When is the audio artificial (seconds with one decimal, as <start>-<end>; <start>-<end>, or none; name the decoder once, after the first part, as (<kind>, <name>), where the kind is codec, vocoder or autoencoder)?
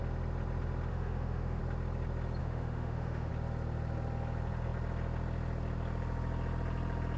0.9-1.6 (autoencoder, DAC-VAE); 2.4-3.3